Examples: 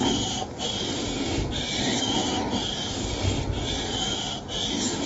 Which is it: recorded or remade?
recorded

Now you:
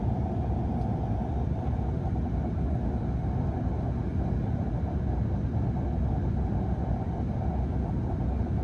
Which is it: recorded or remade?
recorded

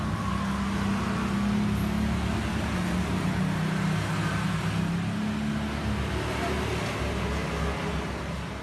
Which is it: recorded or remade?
recorded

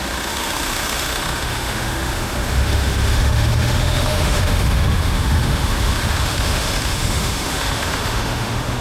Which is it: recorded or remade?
remade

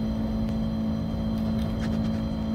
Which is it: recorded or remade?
recorded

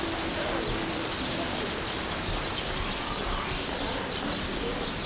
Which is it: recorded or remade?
recorded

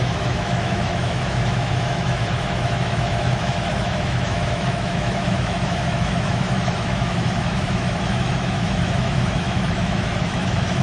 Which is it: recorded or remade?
remade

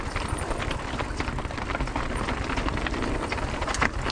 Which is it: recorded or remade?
recorded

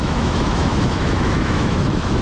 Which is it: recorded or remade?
remade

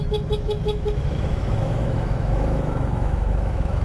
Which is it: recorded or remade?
remade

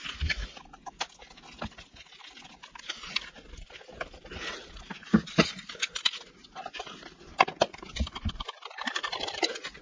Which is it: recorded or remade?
recorded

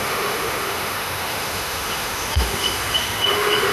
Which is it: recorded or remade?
remade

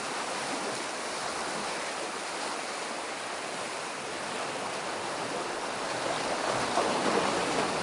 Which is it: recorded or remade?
recorded